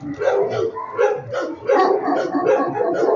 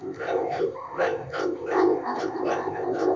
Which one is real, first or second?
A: first